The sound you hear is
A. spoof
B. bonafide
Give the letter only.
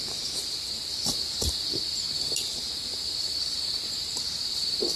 A